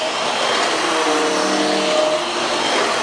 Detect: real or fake real